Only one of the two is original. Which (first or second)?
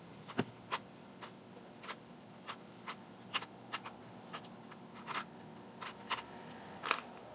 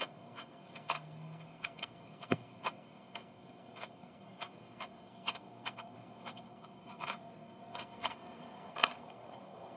first